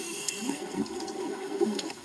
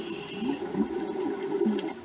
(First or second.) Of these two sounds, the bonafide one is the second